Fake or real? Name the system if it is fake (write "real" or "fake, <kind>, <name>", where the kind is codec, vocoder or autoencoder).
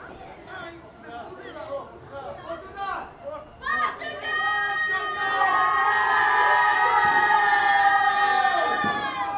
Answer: real